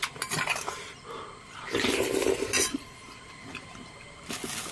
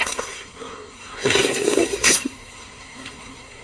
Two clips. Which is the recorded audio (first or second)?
first